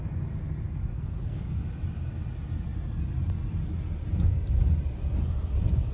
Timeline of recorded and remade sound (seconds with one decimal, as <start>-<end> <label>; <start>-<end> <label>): 0.0-0.9 recorded; 0.9-1.6 remade; 1.6-5.9 recorded